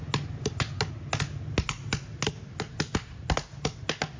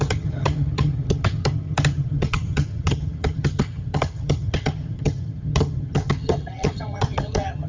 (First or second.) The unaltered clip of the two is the first